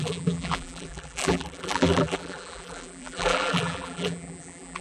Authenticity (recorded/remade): remade